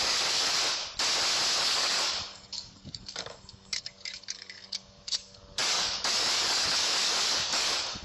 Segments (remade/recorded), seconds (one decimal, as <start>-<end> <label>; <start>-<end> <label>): 0.0-0.6 remade; 0.6-1.6 recorded; 1.6-8.0 remade